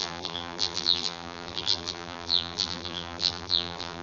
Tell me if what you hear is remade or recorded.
remade